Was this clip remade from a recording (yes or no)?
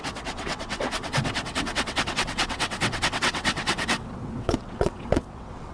yes